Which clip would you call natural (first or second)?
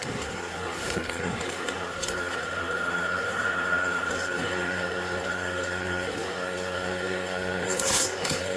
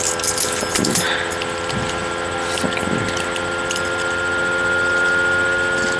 second